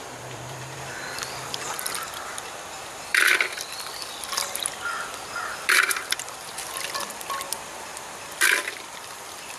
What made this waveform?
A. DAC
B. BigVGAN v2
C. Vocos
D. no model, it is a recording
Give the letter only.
B